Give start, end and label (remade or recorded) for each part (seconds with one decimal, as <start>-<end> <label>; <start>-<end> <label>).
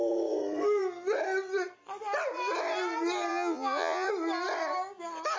0.0-3.3 recorded; 3.3-4.1 remade; 4.1-5.4 recorded